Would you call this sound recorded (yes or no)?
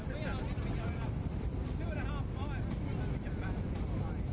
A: yes